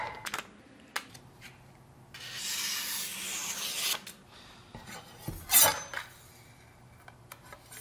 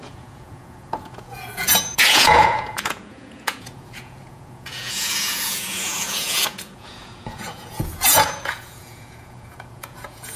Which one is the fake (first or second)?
second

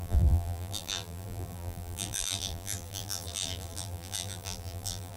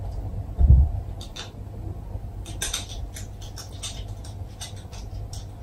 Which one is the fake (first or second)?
first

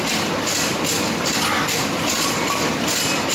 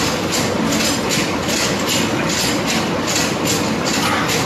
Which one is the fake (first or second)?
first